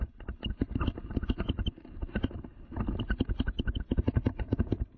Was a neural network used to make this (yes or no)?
no